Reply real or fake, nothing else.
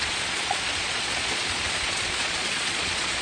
fake